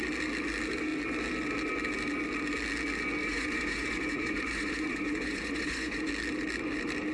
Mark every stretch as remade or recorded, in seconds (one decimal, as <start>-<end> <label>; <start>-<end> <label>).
0.0-3.2 recorded; 3.2-6.1 remade; 6.1-7.1 recorded